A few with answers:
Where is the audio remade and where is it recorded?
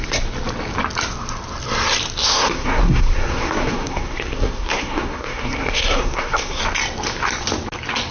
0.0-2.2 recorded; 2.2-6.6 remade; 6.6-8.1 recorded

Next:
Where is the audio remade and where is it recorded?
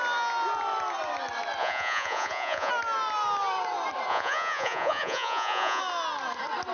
0.0-1.6 recorded; 1.6-2.7 remade; 2.7-4.1 recorded; 4.1-5.8 remade; 5.8-6.7 recorded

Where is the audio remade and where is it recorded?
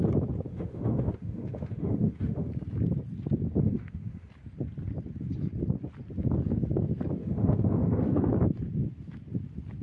0.0-0.5 recorded; 0.5-2.5 remade; 2.5-3.6 recorded; 3.6-4.3 remade; 4.3-7.2 recorded; 7.2-8.3 remade; 8.3-9.8 recorded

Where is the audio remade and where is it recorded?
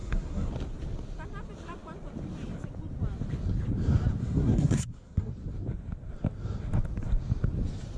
0.0-0.5 remade; 0.5-4.2 recorded; 4.2-5.3 remade; 5.3-8.0 recorded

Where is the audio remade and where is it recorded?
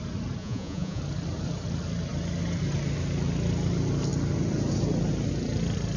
0.0-0.4 recorded; 0.4-1.0 remade; 1.0-6.0 recorded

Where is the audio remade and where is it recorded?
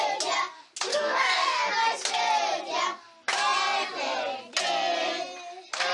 0.0-0.9 recorded; 0.9-1.7 remade; 1.7-5.9 recorded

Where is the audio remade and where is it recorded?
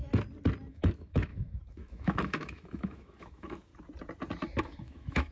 0.0-0.7 recorded; 0.7-3.7 remade; 3.7-4.6 recorded; 4.6-5.3 remade